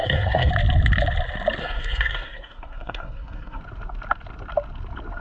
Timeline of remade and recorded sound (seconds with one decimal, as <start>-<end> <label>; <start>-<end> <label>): 0.0-0.5 remade; 0.5-1.6 recorded; 1.6-3.6 remade; 3.6-5.2 recorded